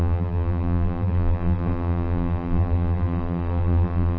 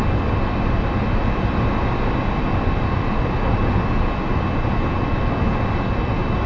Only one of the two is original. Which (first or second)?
second